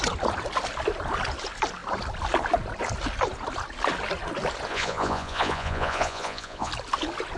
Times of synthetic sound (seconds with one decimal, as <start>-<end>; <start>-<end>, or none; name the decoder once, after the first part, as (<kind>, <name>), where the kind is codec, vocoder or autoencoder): 4.7-6.7 (vocoder, Vocos)